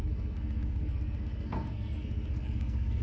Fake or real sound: fake